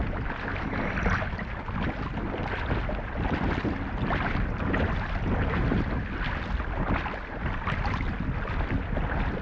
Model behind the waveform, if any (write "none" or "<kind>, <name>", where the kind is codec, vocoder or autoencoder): none